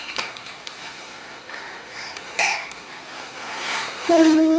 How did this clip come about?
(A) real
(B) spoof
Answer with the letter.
B